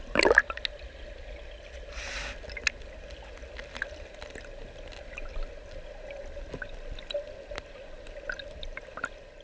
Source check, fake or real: real